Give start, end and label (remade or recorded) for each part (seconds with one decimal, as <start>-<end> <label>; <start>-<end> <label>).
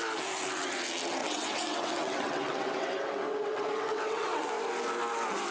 0.0-1.2 recorded; 1.2-4.5 remade; 4.5-5.5 recorded